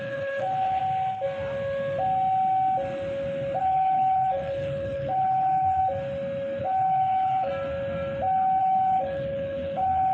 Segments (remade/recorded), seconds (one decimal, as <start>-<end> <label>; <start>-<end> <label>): 0.0-0.8 remade; 0.8-3.6 recorded; 3.6-5.8 remade; 5.8-6.6 recorded; 6.6-7.5 remade; 7.5-8.6 recorded; 8.6-10.1 remade